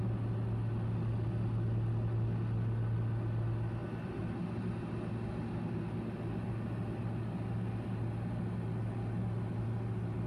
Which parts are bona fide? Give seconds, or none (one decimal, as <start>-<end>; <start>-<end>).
0.0-10.3